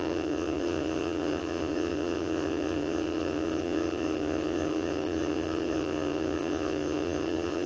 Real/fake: fake